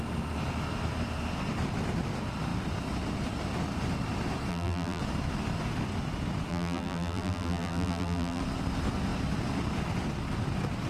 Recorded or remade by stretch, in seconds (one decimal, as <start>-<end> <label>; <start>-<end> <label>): 0.0-4.5 recorded; 4.5-5.0 remade; 5.0-6.5 recorded; 6.5-8.4 remade; 8.4-10.9 recorded